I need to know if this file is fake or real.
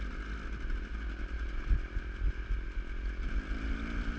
real